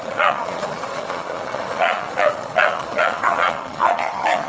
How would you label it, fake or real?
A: fake